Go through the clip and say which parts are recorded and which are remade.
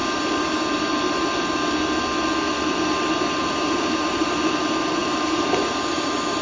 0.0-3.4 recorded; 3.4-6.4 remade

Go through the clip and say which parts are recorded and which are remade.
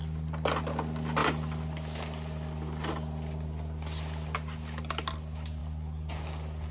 0.0-6.7 recorded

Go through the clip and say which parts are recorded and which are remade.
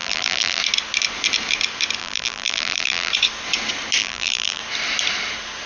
0.0-0.6 remade; 0.6-2.0 recorded; 2.0-3.1 remade; 3.1-4.0 recorded; 4.0-4.6 remade; 4.6-5.7 recorded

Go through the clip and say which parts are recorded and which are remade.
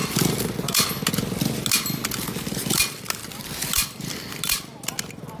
0.0-3.2 recorded; 3.2-4.4 remade; 4.4-5.4 recorded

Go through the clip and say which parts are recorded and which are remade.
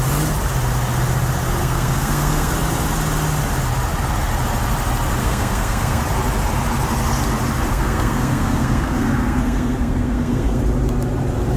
0.0-1.6 recorded; 1.6-2.5 remade; 2.5-5.2 recorded; 5.2-6.0 remade; 6.0-7.7 recorded; 7.7-10.6 remade; 10.6-11.6 recorded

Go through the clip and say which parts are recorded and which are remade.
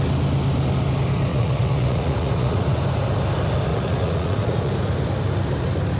0.0-1.3 recorded; 1.3-2.8 remade; 2.8-3.7 recorded; 3.7-4.7 remade; 4.7-6.0 recorded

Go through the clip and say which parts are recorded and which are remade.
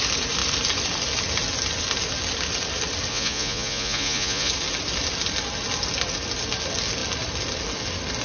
0.0-3.1 recorded; 3.1-4.5 remade; 4.5-8.2 recorded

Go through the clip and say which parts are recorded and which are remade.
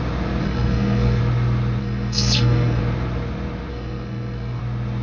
0.0-0.4 recorded; 0.4-1.2 remade; 1.2-1.8 recorded; 1.8-2.8 remade; 2.8-3.7 recorded; 3.7-4.6 remade; 4.6-5.0 recorded